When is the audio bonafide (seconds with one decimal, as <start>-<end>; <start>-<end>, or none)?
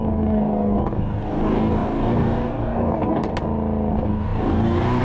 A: 3.3-3.9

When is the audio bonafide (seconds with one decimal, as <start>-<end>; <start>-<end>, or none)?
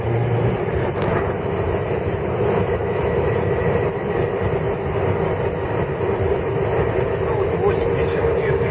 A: 0.0-8.1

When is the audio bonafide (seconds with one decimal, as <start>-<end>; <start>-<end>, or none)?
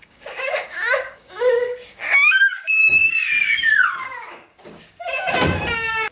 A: 2.8-3.4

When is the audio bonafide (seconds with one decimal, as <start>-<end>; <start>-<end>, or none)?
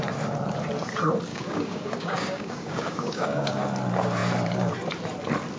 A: 0.0-1.3; 3.6-5.6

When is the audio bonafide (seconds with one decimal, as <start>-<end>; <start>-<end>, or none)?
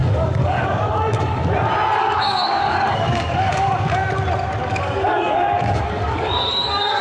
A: 1.4-2.0; 4.0-4.6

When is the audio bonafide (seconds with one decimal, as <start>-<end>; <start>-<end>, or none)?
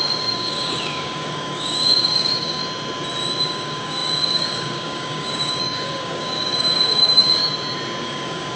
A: 2.6-3.4; 7.4-8.0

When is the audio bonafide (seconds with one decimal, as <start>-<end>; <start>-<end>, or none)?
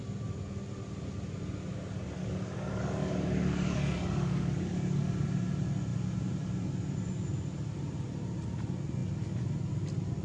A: 0.0-1.7; 5.1-10.2